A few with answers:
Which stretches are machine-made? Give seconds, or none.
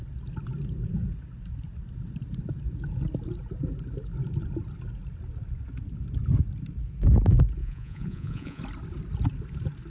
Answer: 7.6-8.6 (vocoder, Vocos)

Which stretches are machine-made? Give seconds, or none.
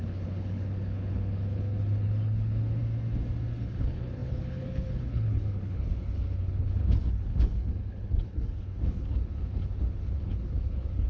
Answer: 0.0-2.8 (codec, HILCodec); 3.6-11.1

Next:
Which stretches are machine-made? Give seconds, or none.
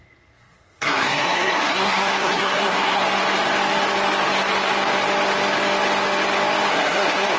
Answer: 0.0-3.0 (codec, SNAC); 6.7-7.4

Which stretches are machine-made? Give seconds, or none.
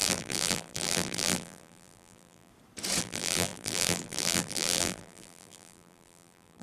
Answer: 0.0-2.5 (vocoder, BigVGAN v2); 3.0-6.6